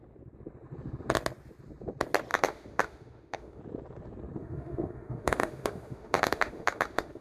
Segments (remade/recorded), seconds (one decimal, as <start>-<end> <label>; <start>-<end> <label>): 0.0-2.3 recorded; 2.3-3.6 remade; 3.6-4.4 recorded; 4.4-7.2 remade